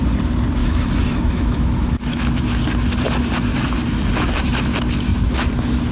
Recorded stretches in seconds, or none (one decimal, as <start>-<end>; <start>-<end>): 0.0-0.6; 2.6-5.9